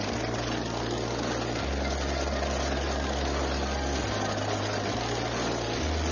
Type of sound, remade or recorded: recorded